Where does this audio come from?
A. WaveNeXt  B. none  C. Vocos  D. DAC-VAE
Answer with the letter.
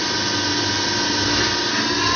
B